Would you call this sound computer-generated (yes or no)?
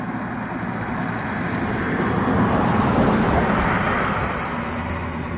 no